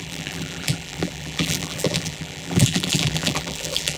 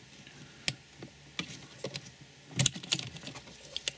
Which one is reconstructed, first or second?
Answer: first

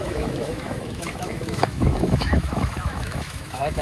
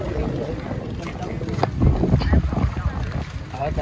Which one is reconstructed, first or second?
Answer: first